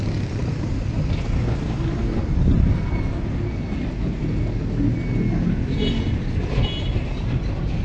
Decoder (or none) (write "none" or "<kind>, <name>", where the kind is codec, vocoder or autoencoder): none